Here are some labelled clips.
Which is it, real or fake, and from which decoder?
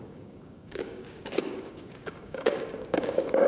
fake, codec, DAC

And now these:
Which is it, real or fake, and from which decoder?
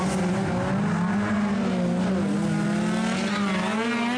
real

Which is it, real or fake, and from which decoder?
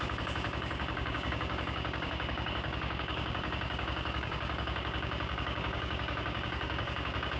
fake, codec, DAC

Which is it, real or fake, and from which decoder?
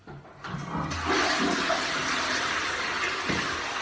real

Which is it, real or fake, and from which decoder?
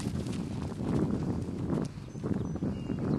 real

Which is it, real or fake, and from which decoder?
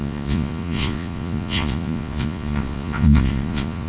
fake, vocoder, Vocos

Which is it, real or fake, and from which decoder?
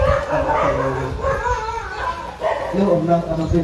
real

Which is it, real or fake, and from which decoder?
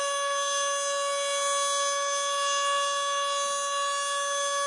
real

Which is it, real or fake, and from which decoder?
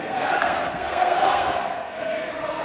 fake, codec, SNAC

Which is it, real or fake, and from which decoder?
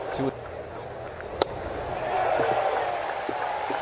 real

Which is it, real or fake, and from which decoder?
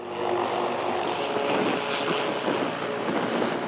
real